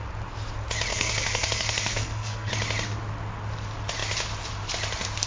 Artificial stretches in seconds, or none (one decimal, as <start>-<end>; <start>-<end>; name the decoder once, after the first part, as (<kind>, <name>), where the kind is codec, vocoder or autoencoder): 0.9-2.5 (codec, SNAC)